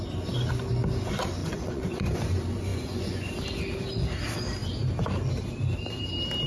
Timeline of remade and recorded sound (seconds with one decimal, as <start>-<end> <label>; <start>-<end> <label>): 0.0-1.4 recorded; 1.4-2.2 remade; 2.2-2.7 recorded; 2.7-3.3 remade; 3.3-6.5 recorded